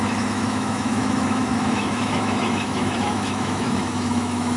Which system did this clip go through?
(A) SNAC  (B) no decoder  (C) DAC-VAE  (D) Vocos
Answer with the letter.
C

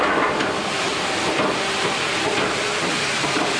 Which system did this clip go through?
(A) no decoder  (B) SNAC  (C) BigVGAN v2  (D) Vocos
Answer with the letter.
A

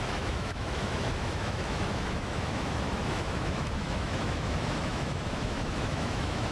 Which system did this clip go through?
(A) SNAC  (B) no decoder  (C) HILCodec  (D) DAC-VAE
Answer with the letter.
D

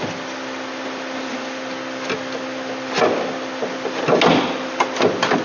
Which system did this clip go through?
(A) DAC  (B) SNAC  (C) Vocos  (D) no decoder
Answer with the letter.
D